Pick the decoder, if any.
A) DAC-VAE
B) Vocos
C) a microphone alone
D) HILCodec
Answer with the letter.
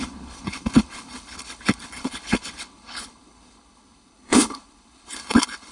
D